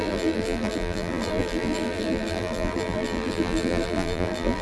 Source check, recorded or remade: remade